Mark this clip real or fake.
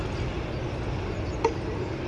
real